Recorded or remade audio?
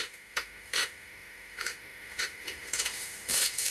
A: remade